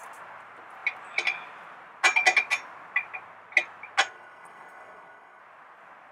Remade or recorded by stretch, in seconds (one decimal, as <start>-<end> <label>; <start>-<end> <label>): 0.0-4.0 recorded; 4.0-5.4 remade; 5.4-6.1 recorded